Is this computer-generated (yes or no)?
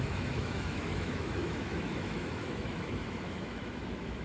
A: yes